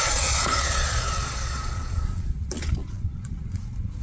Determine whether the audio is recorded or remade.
remade